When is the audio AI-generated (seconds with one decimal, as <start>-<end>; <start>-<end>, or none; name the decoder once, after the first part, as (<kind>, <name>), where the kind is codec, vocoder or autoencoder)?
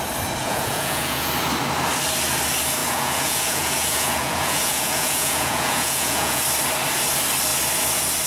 0.4-1.3 (vocoder, Vocos); 2.8-6.4